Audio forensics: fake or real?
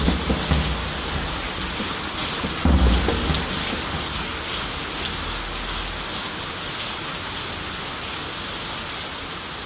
real